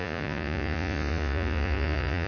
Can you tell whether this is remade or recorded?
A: remade